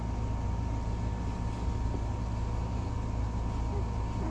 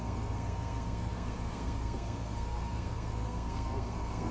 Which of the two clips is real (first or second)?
first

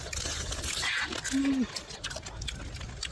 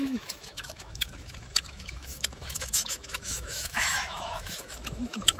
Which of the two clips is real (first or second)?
first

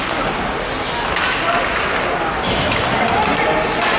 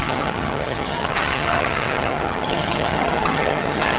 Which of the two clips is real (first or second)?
first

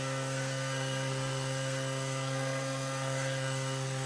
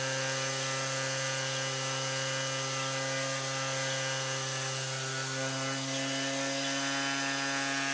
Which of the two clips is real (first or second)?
second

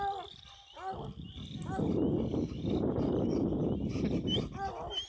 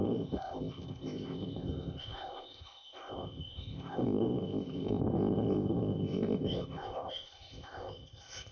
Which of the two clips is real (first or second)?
first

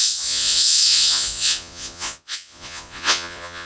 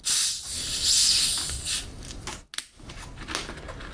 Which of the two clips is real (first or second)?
second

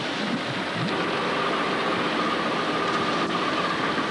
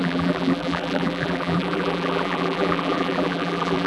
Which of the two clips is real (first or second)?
first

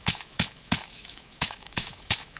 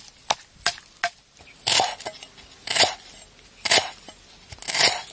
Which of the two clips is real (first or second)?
second